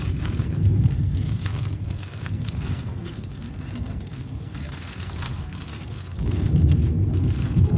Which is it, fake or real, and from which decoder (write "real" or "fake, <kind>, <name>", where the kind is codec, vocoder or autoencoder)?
fake, codec, SNAC